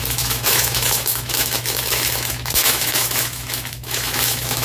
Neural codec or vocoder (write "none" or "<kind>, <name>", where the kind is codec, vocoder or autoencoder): autoencoder, DAC-VAE